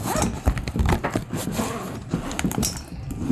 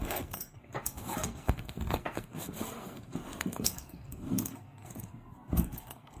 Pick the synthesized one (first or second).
second